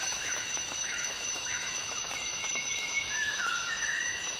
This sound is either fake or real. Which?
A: fake